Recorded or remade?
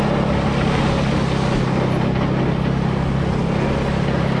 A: recorded